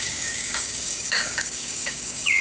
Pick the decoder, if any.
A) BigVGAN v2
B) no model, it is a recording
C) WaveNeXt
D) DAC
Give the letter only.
D